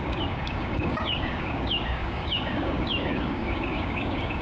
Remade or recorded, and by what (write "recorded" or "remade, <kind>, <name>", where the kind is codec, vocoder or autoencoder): remade, codec, DAC